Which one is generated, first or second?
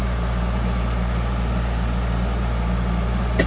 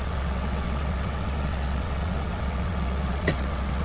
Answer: second